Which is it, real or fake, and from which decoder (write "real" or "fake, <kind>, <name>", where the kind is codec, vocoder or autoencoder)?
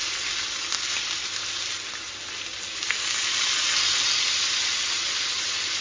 real